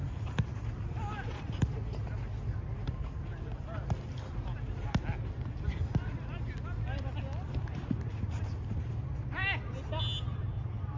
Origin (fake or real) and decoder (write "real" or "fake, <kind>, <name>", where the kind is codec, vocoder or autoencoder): real